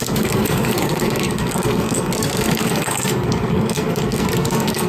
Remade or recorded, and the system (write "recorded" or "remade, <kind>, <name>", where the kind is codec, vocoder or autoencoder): remade, codec, SNAC